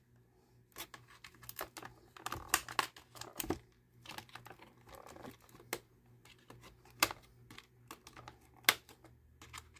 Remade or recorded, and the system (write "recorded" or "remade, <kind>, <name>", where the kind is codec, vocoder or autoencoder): recorded